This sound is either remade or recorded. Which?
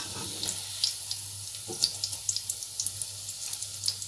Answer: recorded